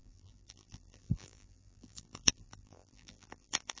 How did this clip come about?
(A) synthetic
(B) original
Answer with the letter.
A